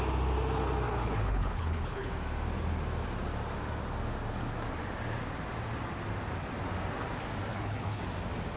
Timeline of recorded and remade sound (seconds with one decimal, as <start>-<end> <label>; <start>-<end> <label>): 0.0-0.9 recorded; 0.9-2.1 remade; 2.1-7.5 recorded; 7.5-8.0 remade; 8.0-8.6 recorded